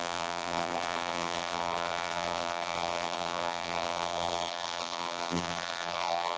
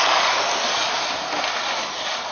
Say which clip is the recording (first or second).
second